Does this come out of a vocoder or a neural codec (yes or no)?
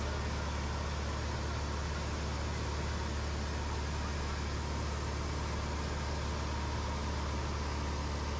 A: no